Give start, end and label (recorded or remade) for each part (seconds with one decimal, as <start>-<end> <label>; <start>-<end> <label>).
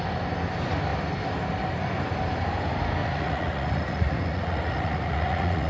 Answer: 0.0-3.0 recorded; 3.0-5.7 remade